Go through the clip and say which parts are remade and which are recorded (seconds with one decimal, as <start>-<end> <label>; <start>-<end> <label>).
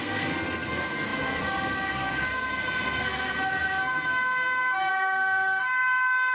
0.0-6.3 remade